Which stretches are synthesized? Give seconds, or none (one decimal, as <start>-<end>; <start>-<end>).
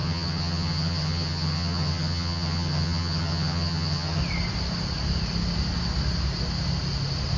0.0-4.2